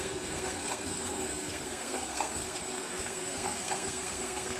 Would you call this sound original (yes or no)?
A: no